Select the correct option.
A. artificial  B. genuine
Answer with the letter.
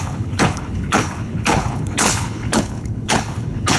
A